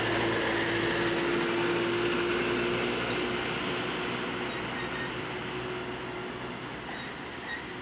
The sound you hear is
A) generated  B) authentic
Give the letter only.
B